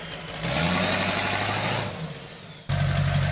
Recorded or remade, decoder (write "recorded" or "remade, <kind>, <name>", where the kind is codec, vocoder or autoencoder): recorded